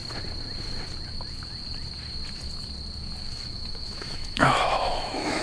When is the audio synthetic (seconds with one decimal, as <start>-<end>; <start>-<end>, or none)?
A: 3.3-5.4